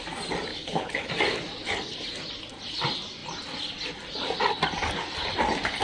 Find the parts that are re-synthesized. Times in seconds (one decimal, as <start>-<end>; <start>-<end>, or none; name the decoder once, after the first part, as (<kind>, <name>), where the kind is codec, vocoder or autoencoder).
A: 0.5-1.1 (codec, HILCodec)